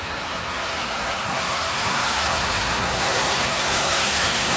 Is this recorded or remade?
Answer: remade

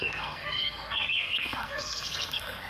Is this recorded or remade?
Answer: remade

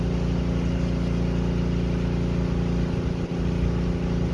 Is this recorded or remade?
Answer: recorded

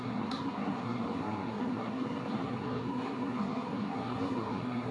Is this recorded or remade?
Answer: remade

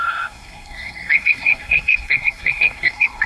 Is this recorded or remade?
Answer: remade